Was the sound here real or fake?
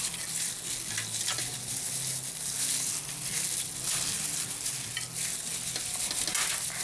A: real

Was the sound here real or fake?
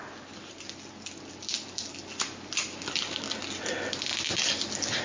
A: real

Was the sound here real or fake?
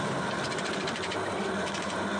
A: real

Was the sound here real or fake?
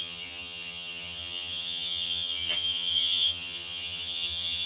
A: fake